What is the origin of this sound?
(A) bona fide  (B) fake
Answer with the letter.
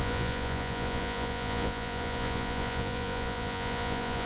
B